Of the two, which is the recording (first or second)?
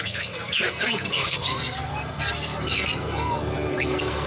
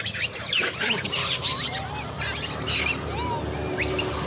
second